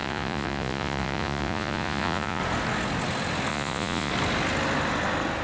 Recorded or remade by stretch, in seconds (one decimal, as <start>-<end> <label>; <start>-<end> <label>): 0.0-2.4 remade; 2.4-3.5 recorded; 3.5-4.1 remade; 4.1-5.4 recorded